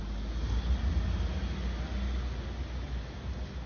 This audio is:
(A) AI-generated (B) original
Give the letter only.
B